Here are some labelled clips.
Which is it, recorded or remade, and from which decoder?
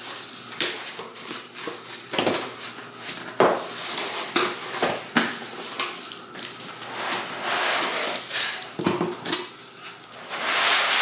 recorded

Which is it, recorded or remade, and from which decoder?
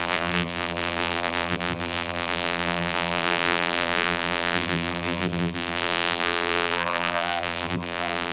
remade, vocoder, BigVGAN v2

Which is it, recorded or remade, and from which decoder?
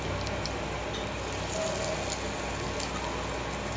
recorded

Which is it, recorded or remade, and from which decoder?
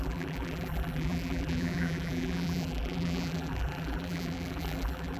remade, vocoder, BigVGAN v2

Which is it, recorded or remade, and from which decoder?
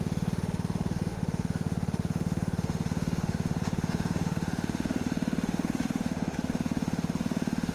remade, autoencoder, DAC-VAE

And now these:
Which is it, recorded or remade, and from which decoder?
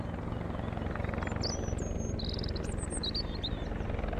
recorded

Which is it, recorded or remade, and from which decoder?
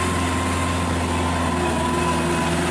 recorded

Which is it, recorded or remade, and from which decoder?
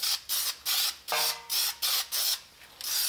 recorded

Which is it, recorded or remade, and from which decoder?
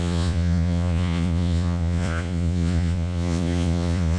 remade, vocoder, Vocos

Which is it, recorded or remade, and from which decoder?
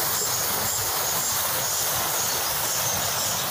recorded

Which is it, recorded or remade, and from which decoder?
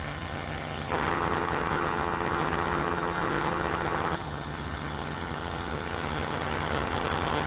remade, vocoder, HiFi-GAN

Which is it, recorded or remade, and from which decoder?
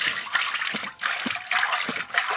recorded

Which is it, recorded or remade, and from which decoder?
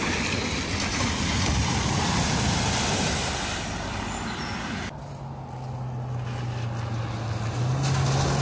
recorded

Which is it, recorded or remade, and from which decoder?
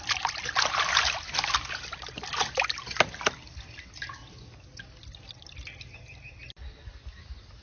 recorded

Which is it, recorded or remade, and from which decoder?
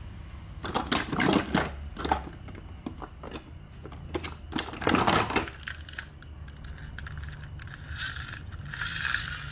recorded